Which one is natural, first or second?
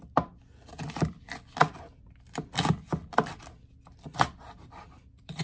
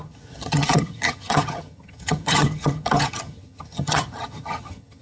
first